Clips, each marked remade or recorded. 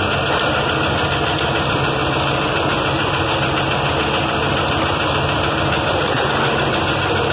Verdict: recorded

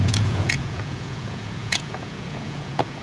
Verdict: remade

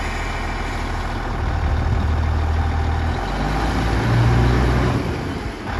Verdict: recorded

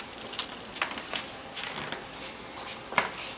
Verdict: recorded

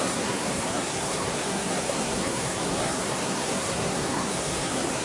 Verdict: remade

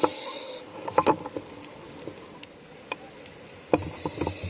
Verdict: remade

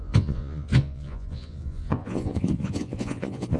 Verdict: remade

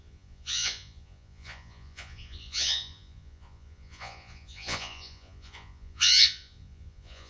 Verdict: remade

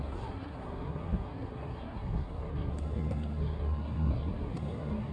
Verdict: remade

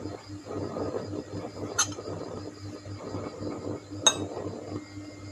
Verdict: recorded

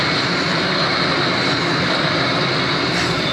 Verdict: recorded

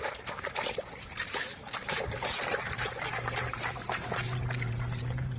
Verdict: remade